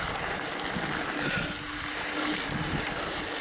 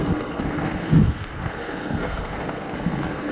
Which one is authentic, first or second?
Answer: first